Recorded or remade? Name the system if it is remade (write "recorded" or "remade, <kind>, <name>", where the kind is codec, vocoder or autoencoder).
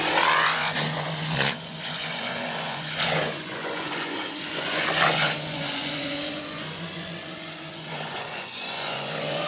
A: remade, vocoder, Vocos